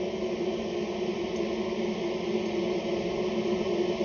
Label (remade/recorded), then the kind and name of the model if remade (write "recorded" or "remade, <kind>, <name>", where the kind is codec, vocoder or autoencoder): recorded